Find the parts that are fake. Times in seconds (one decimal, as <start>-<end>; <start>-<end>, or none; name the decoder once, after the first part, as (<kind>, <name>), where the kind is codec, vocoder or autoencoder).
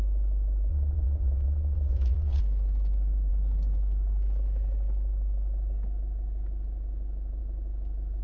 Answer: 0.7-2.4 (vocoder, Vocos)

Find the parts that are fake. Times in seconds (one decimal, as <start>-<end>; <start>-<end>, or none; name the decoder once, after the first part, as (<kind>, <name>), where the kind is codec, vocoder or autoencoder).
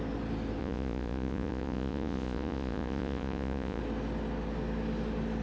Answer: 0.6-3.8 (vocoder, Vocos)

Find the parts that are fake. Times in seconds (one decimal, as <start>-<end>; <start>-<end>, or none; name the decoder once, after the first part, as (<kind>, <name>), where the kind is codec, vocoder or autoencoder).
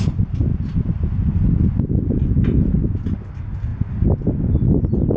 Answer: none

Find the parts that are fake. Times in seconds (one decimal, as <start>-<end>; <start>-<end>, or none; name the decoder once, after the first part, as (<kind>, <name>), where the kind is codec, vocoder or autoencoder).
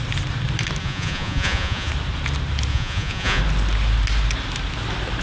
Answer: 0.8-1.9 (vocoder, Vocos); 2.7-3.4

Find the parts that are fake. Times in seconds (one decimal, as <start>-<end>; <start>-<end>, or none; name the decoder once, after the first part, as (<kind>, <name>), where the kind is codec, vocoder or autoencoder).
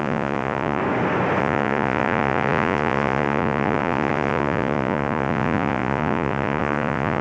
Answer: 0.0-0.8 (vocoder, Vocos); 1.4-7.2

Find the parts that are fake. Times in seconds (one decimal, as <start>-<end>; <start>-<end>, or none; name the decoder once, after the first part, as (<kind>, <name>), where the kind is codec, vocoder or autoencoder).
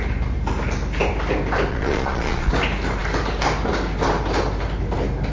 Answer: 1.7-2.5 (vocoder, Vocos)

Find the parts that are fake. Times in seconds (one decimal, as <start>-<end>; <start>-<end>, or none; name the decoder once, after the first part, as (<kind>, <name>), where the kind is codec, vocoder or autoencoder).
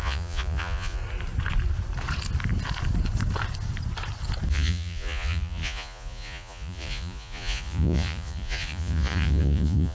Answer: 0.0-1.0 (vocoder, Vocos); 4.5-9.9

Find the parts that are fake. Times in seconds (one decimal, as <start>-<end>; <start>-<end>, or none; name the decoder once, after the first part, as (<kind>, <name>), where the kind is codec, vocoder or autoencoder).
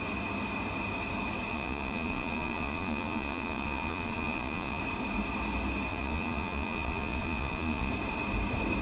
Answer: 1.5-4.8 (vocoder, Vocos); 5.9-7.9